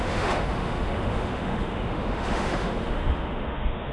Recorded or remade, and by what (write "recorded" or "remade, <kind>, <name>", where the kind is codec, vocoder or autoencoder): remade, autoencoder, DAC-VAE